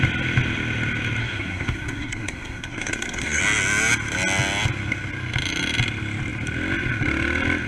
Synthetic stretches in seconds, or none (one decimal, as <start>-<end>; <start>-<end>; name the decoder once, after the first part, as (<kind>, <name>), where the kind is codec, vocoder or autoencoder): 1.2-3.4 (codec, SNAC)